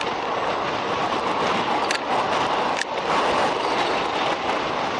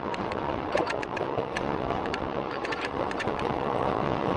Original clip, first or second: first